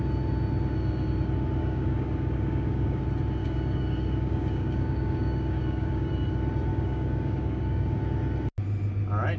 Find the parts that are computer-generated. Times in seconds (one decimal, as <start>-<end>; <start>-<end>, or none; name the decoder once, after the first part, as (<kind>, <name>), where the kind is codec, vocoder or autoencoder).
1.6-3.0 (codec, DAC); 3.4-6.1; 6.7-8.0